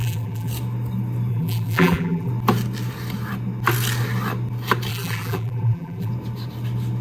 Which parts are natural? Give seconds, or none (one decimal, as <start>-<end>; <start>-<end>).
0.5-1.3; 2.3-4.9; 6.1-7.0